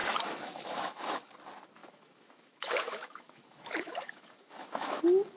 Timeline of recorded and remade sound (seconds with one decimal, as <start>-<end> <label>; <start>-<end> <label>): 0.0-1.3 remade; 1.3-1.8 recorded; 1.8-5.0 remade; 5.0-5.4 recorded